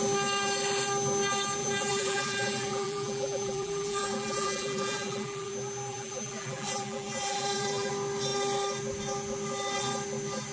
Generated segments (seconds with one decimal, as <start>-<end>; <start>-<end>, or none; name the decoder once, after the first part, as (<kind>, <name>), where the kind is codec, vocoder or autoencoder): 1.6-5.5 (vocoder, BigVGAN v2); 5.9-7.9